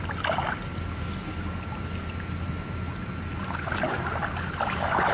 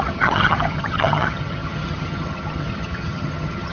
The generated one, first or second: second